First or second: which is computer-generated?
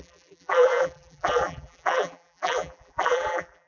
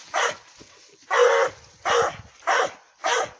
first